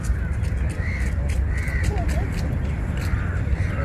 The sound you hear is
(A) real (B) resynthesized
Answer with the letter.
B